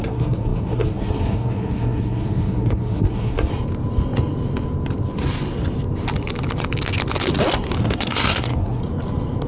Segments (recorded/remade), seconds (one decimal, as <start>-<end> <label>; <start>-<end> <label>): 0.0-3.5 remade; 3.5-7.8 recorded; 7.8-8.8 remade; 8.8-9.5 recorded